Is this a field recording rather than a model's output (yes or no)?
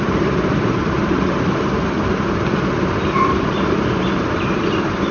no